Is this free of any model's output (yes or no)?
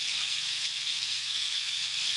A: no